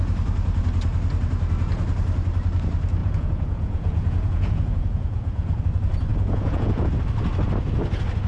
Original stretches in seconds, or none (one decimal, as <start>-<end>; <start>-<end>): 0.0-3.0; 5.6-6.1; 6.9-8.3